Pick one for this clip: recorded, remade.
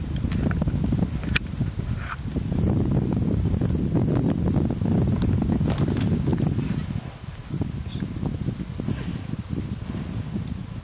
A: recorded